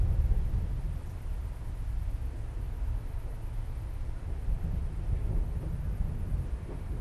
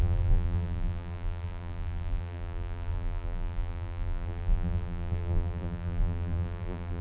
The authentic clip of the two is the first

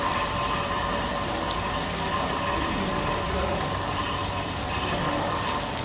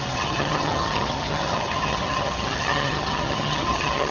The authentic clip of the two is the first